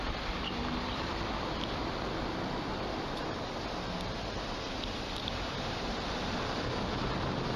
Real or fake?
real